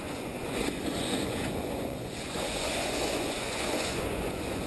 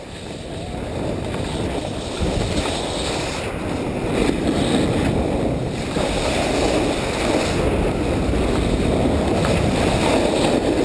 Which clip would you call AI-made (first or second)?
first